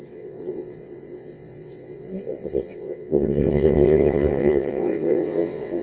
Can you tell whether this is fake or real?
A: fake